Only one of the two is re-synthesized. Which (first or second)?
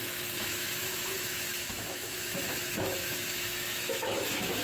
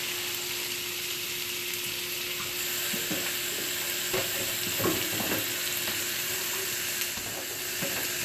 first